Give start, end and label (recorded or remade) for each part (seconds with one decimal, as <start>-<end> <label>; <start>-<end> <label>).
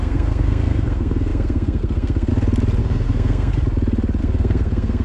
0.0-2.3 remade; 2.3-2.8 recorded; 2.8-3.5 remade; 3.5-4.2 recorded; 4.2-5.0 remade